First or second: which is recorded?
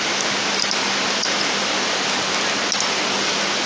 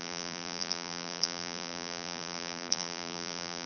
first